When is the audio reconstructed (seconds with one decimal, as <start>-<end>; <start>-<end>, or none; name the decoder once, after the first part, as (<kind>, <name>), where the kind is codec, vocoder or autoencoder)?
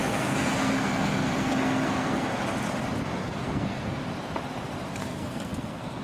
0.0-2.3 (codec, SNAC); 3.2-4.0; 5.0-6.0